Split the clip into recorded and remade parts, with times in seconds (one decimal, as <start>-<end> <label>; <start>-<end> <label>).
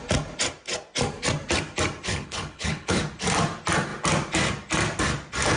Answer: 0.0-2.1 recorded; 2.1-3.0 remade; 3.0-5.6 recorded